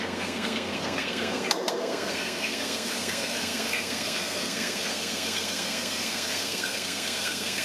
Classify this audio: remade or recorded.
remade